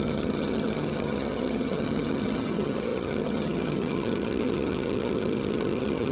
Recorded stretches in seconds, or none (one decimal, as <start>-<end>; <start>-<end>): none